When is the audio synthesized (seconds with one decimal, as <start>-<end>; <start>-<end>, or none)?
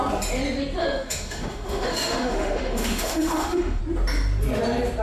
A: 0.8-3.8